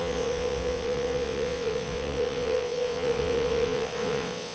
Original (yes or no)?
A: no